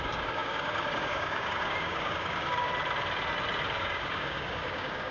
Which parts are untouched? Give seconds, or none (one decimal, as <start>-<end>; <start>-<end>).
2.7-3.8